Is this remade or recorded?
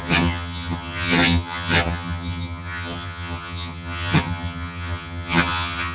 remade